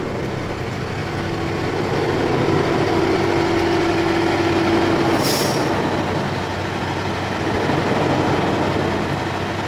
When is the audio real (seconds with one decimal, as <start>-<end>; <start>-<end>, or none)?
0.0-1.0; 2.0-9.7